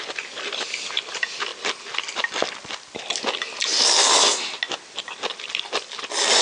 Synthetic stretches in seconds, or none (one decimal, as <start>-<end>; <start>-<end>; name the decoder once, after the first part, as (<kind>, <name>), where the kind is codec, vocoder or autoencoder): none

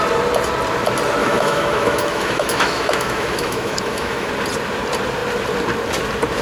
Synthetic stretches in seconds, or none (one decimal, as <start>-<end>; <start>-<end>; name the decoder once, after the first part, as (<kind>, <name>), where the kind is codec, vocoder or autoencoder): 1.2-4.3 (autoencoder, DAC-VAE)

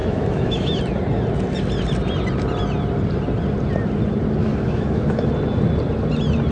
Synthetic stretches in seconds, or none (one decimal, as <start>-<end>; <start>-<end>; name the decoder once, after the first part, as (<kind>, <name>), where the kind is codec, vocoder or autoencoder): 0.0-0.8 (autoencoder, DAC-VAE); 4.4-5.3